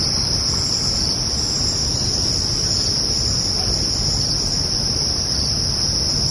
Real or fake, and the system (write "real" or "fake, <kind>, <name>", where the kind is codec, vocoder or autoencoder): real